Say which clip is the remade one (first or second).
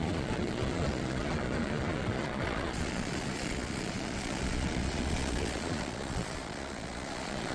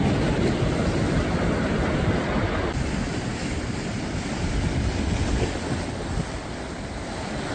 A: first